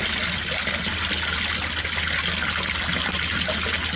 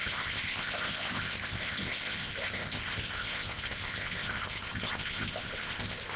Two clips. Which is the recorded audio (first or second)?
first